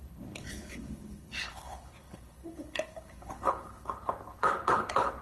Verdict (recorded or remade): remade